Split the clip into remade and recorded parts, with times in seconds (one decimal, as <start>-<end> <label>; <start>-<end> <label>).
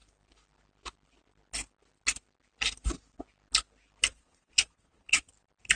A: 0.0-4.1 recorded; 4.1-5.3 remade; 5.3-5.8 recorded